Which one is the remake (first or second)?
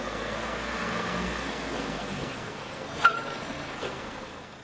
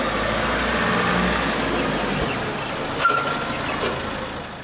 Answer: first